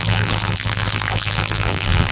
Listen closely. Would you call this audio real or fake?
fake